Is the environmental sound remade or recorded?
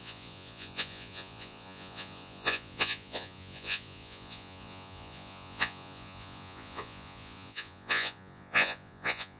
remade